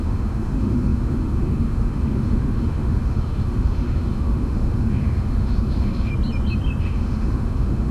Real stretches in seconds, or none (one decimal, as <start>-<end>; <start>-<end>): 6.1-6.8